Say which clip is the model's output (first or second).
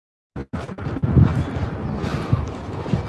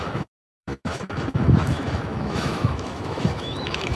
second